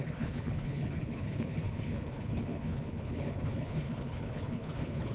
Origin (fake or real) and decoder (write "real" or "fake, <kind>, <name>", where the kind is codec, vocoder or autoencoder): fake, codec, HILCodec